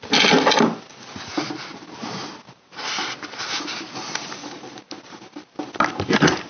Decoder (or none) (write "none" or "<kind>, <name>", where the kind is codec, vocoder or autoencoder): none